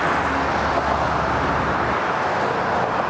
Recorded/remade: recorded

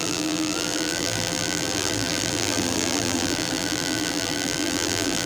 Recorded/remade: remade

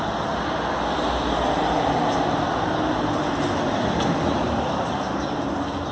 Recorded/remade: recorded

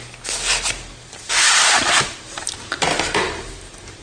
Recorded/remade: recorded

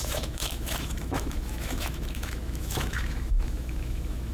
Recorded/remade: remade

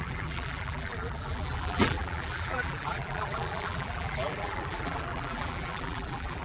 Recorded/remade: remade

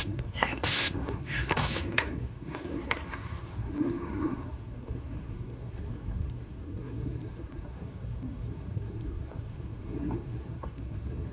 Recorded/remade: remade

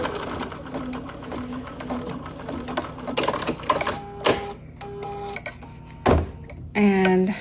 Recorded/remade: recorded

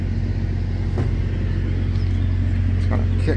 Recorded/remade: recorded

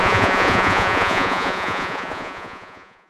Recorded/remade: remade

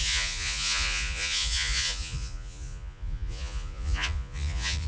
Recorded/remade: remade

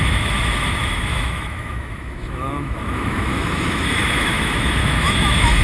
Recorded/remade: remade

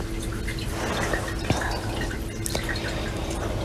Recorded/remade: recorded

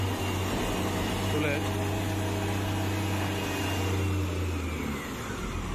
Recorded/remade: recorded